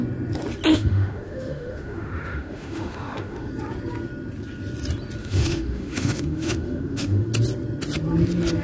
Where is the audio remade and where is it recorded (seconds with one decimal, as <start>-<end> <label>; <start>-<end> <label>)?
0.0-0.7 recorded; 0.7-3.5 remade; 3.5-5.2 recorded; 5.2-7.3 remade; 7.3-8.6 recorded